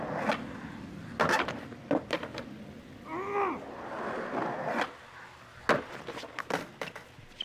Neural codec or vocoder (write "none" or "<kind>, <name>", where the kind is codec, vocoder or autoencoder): none